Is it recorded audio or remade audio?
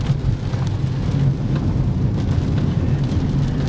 recorded